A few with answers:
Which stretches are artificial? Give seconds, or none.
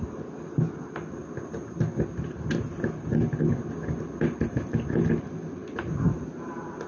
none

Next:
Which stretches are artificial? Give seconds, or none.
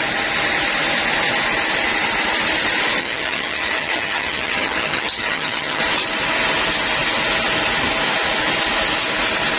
3.0-5.8 (vocoder, HiFi-GAN)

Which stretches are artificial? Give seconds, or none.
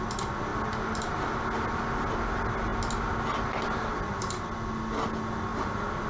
none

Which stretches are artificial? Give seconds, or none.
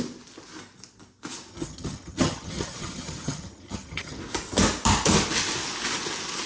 1.5-4.2 (vocoder, HiFi-GAN)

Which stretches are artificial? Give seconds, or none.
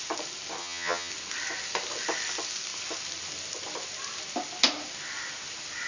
0.6-1.1 (vocoder, HiFi-GAN)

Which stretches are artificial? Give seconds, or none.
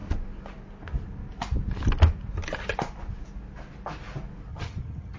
4.5-5.2 (vocoder, HiFi-GAN)